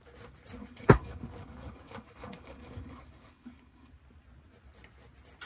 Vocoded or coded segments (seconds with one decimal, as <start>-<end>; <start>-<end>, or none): 0.6-3.9